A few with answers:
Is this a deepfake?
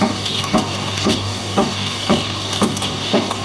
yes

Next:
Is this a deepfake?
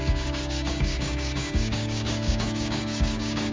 yes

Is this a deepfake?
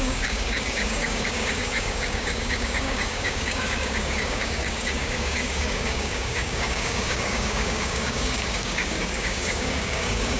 yes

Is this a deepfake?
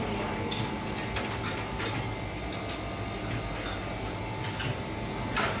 no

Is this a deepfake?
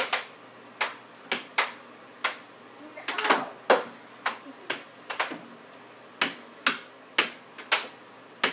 no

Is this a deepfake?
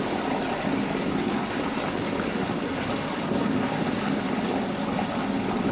no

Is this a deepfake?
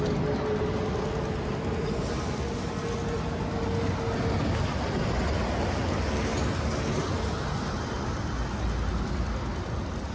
no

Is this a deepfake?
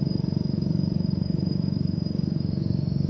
yes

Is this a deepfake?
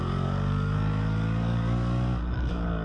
yes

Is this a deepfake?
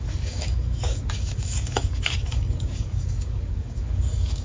yes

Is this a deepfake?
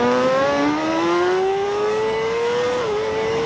yes